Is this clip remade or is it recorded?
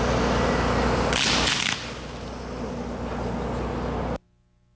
recorded